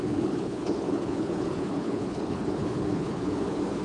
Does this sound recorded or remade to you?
remade